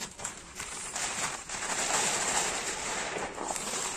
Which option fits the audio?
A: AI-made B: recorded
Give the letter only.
A